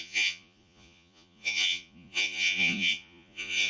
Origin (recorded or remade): remade